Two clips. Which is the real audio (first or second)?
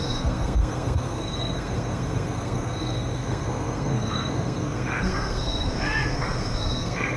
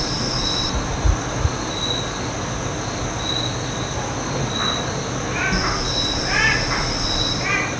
second